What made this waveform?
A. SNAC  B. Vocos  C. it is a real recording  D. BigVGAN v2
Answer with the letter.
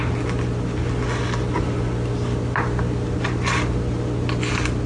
C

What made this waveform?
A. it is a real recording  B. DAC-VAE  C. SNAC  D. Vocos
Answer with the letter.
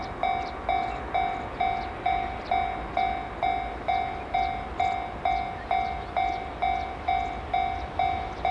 A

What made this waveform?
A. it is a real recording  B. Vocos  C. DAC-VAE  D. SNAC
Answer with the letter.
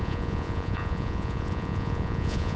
B